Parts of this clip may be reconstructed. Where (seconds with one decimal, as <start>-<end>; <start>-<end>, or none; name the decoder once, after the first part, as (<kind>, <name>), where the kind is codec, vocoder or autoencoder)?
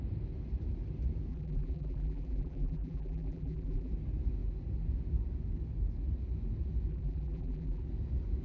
1.3-3.9 (vocoder, BigVGAN v2); 6.9-7.8